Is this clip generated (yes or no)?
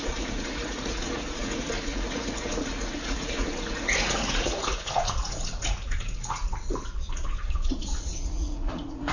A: yes